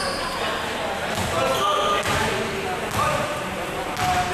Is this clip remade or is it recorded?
recorded